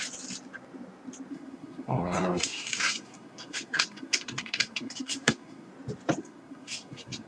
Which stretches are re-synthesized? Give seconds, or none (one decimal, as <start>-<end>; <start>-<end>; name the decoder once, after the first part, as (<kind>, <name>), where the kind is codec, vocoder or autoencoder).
1.3-5.7 (codec, SNAC); 6.2-7.3